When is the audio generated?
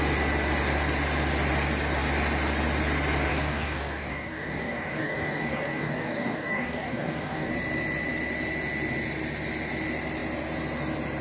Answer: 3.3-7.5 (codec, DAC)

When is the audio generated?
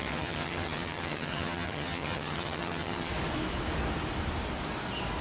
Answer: 0.0-3.1 (vocoder, HiFi-GAN)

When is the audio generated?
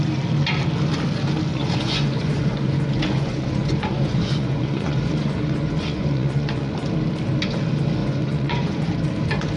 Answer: 1.5-6.7 (vocoder, Vocos); 8.0-8.9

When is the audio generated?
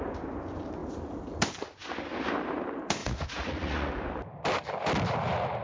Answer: 3.0-3.9 (vocoder, Vocos)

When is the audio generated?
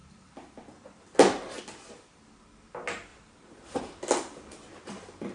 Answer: 3.1-3.8 (vocoder, BigVGAN v2)